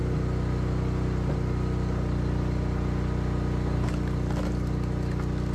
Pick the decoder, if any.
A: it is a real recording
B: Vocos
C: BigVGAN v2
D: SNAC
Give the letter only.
A